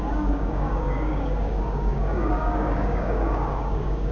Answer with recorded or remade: remade